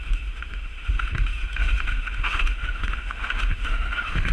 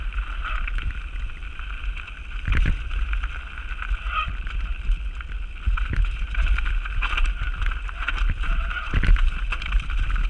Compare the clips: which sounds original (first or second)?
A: second